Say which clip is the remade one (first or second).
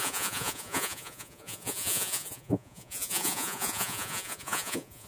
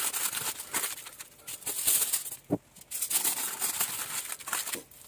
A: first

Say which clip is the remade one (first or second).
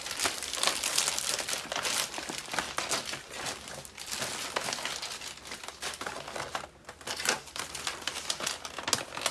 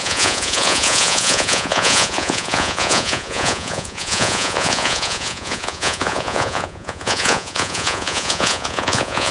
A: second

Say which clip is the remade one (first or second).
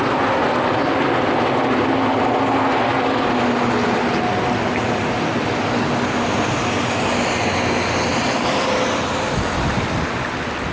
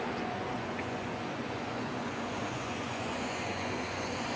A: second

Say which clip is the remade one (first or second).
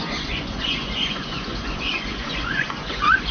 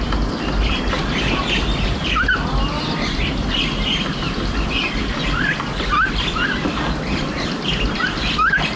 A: first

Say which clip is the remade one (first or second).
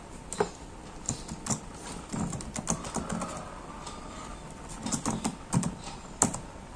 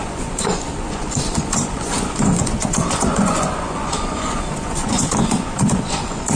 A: second